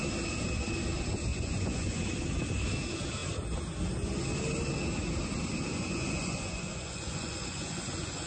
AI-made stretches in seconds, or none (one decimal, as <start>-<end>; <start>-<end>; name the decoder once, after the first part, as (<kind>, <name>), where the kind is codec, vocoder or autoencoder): 1.3-2.0 (vocoder, Vocos); 5.7-8.3